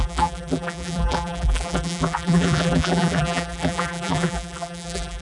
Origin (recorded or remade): remade